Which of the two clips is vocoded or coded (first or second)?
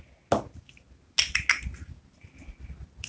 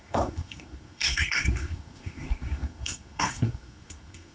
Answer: second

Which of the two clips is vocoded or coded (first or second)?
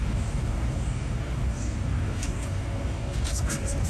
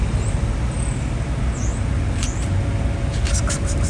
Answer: first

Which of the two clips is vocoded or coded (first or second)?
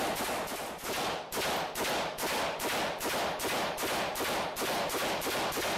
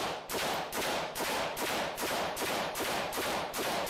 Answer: second